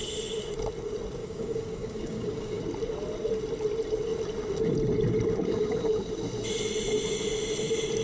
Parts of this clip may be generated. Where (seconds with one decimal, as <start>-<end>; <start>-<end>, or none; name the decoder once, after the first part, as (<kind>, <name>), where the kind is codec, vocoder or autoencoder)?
1.2-2.6 (codec, DAC)